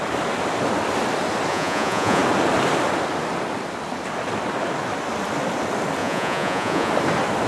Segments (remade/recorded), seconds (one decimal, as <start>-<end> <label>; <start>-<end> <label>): 0.0-1.5 recorded; 1.5-2.2 remade; 2.2-6.0 recorded; 6.0-6.9 remade; 6.9-7.5 recorded